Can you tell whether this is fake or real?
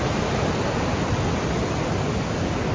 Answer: real